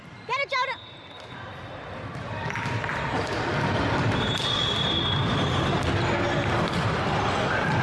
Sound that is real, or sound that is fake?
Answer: real